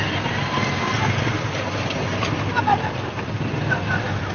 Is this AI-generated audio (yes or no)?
no